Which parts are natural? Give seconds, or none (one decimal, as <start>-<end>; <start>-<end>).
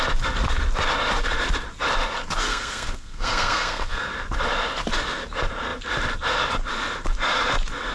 0.0-2.5; 4.1-7.9